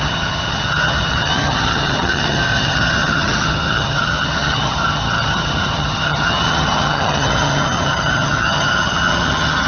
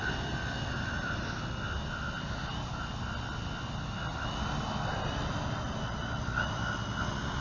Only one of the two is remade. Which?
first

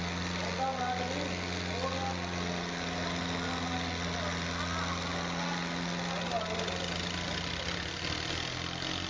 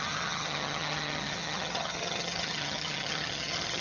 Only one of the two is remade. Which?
second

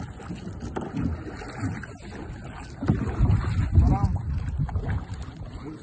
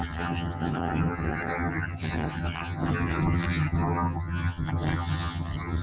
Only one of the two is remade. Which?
second